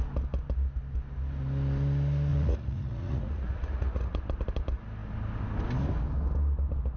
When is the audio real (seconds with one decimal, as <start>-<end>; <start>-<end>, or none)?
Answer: 0.0-2.3; 4.2-7.0